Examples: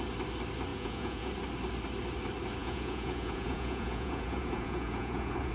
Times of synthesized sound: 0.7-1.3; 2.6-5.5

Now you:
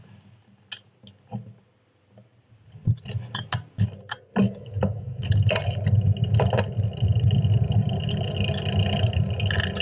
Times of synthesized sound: 4.4-5.3

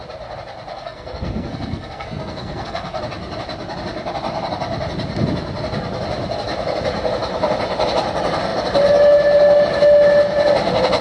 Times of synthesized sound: 0.7-3.0

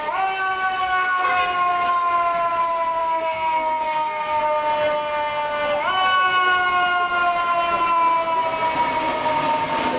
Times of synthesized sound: 0.8-1.4; 3.0-4.4

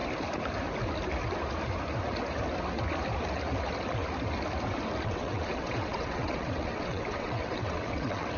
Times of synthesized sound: 5.0-8.4

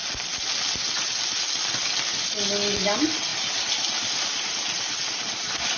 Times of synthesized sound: none

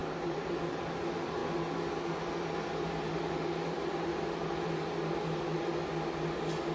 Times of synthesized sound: 0.0-0.8

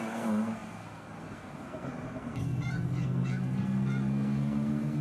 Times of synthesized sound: 0.0-5.0